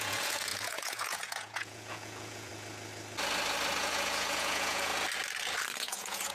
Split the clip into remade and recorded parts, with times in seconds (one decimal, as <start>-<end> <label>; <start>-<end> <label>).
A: 0.0-2.5 remade; 2.5-3.8 recorded; 3.8-4.9 remade; 4.9-5.8 recorded; 5.8-6.3 remade